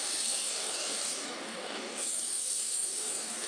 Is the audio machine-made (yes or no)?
yes